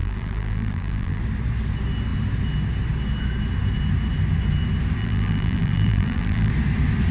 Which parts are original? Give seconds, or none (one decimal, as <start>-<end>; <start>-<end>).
1.2-5.0; 6.5-7.1